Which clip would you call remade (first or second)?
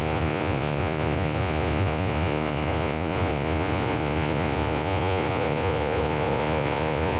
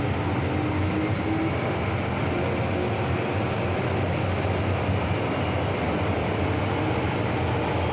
first